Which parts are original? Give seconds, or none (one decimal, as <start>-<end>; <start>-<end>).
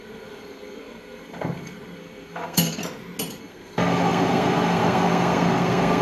2.8-3.4